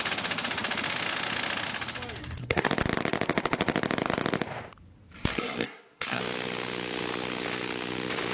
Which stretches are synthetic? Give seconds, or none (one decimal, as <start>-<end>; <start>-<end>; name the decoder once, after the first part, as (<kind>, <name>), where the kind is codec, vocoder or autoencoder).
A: 2.2-2.7 (codec, SNAC); 5.3-6.2

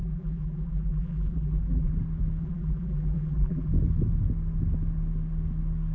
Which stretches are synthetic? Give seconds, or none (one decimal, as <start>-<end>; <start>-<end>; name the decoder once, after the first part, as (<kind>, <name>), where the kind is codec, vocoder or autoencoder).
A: 0.0-1.9 (vocoder, BigVGAN v2); 2.4-3.7

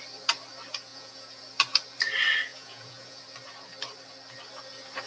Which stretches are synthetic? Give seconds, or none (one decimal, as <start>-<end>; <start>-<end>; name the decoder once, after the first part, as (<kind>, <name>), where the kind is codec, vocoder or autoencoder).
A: 0.9-1.4 (vocoder, Vocos); 2.5-3.2

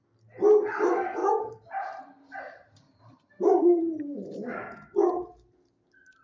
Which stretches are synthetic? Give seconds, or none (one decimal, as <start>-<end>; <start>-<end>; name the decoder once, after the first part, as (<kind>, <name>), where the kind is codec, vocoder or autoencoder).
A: 1.2-3.8 (vocoder, BigVGAN v2)

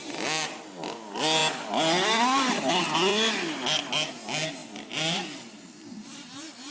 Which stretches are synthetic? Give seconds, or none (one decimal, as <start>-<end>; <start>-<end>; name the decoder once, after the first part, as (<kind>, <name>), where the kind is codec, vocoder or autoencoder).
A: 3.1-3.8 (vocoder, BigVGAN v2); 4.6-6.3

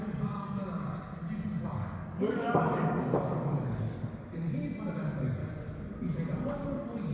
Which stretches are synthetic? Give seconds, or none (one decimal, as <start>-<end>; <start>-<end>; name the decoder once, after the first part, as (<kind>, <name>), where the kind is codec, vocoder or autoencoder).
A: 0.0-0.6 (codec, DAC); 1.6-4.1; 5.0-5.4; 6.4-7.1